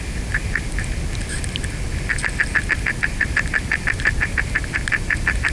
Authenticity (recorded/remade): recorded